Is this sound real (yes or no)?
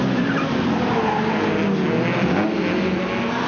yes